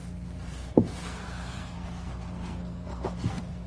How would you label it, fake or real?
fake